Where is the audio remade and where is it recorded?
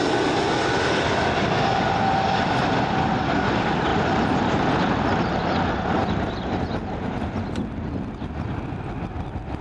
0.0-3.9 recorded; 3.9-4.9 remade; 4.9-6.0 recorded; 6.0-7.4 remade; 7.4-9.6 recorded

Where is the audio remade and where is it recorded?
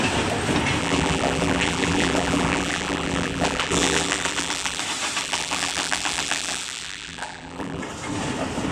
0.0-0.8 recorded; 0.8-4.8 remade; 4.8-5.2 recorded; 5.2-7.8 remade; 7.8-8.7 recorded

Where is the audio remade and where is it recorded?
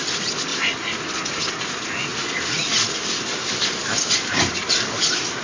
0.0-5.4 recorded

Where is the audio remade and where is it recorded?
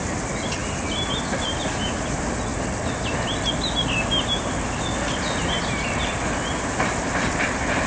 0.0-7.9 recorded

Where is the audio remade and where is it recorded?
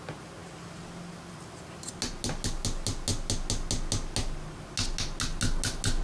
0.0-6.0 recorded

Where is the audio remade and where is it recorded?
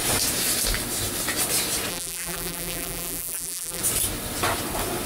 0.0-1.9 recorded; 1.9-3.8 remade; 3.8-5.1 recorded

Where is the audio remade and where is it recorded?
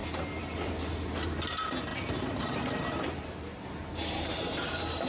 0.0-1.9 recorded; 1.9-5.1 remade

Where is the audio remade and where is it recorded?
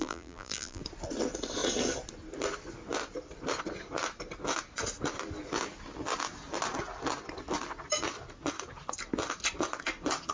0.0-0.8 remade; 0.8-10.3 recorded